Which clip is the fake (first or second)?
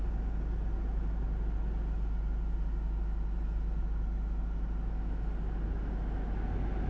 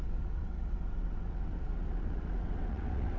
second